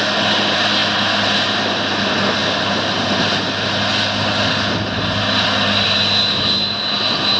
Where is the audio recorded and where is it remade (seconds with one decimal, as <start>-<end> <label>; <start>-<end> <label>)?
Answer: 0.0-7.4 recorded